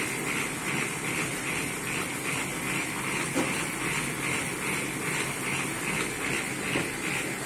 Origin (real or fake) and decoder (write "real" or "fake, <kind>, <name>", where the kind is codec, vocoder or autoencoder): real